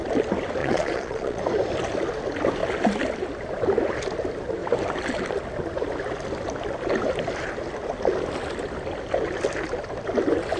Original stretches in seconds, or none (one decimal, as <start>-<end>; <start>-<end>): 0.0-0.6; 1.4-10.6